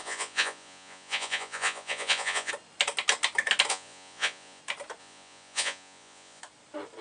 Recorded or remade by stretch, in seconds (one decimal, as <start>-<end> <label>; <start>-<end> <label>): 0.0-2.5 remade; 2.5-3.7 recorded; 3.7-4.6 remade; 4.6-5.0 recorded; 5.0-6.4 remade; 6.4-7.0 recorded